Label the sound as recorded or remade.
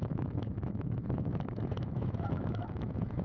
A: remade